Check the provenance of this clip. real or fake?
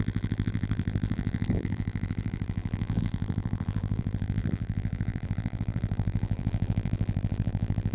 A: fake